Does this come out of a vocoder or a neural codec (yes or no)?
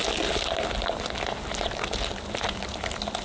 no